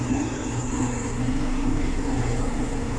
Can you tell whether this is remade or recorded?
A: remade